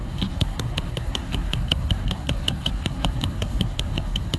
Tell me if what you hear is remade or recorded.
remade